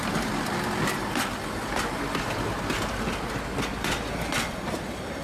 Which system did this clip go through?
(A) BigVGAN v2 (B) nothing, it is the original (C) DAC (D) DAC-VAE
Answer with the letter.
B